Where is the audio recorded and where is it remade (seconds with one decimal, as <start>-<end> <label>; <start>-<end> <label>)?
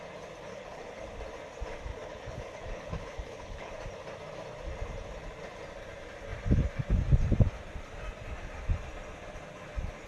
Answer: 0.0-0.5 recorded; 0.5-1.0 remade; 1.0-1.9 recorded; 1.9-3.7 remade; 3.7-10.1 recorded